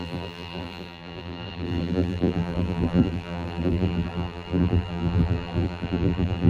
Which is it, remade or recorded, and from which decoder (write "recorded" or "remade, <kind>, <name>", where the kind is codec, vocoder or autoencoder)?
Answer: remade, vocoder, BigVGAN v2